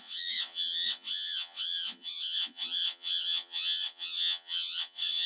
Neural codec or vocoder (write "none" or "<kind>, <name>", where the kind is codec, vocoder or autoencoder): vocoder, WaveNeXt